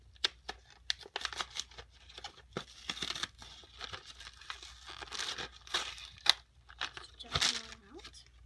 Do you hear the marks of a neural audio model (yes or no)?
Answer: no